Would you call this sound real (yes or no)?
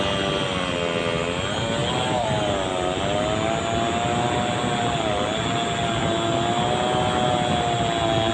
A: yes